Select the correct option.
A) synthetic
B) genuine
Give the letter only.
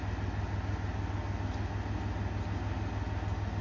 B